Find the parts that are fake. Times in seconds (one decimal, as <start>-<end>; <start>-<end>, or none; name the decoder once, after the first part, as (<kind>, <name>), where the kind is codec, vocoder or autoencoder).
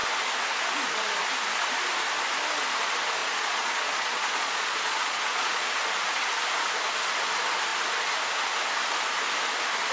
3.2-5.7 (vocoder, Vocos)